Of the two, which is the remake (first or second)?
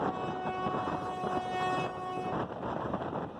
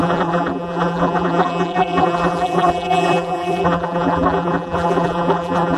second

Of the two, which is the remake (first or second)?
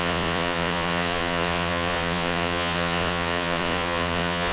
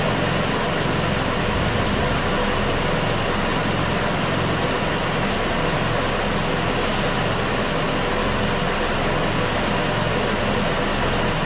first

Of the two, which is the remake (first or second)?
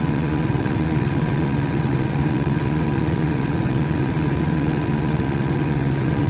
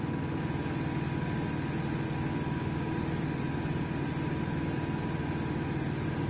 first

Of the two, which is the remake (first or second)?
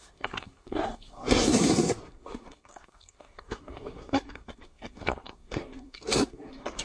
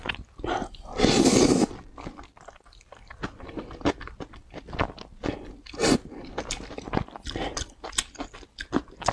first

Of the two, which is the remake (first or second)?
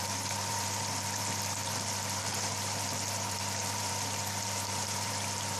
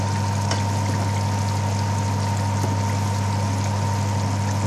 first